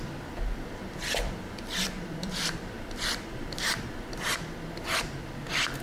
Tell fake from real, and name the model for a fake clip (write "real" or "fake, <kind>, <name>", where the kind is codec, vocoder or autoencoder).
fake, vocoder, BigVGAN v2